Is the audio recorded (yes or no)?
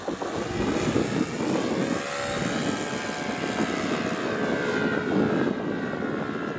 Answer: yes